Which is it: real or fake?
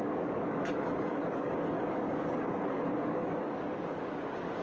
fake